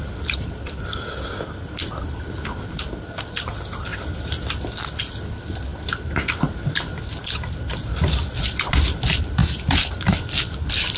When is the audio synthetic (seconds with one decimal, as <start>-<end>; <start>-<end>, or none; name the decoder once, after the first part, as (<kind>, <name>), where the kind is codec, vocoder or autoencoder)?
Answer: 0.0-3.9 (vocoder, BigVGAN v2); 4.5-11.0